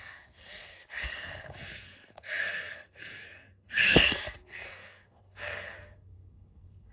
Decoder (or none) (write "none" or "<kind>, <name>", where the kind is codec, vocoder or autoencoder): codec, SNAC